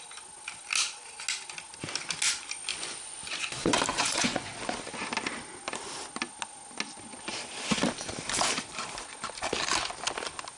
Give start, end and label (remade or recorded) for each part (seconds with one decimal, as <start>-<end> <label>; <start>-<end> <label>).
0.0-2.7 recorded; 2.7-3.5 remade; 3.5-3.9 recorded; 3.9-4.5 remade; 4.5-10.6 recorded